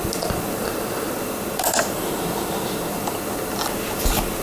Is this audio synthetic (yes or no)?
no